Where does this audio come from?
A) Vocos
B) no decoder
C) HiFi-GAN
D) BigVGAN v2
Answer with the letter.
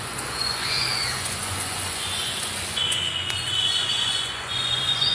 A